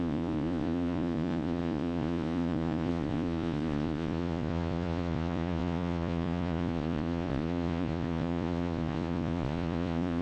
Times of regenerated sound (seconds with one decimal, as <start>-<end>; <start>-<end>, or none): 0.0-10.2